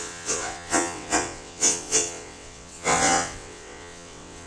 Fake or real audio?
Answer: fake